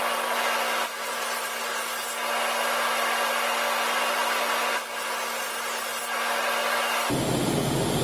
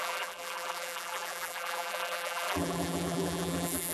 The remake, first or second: second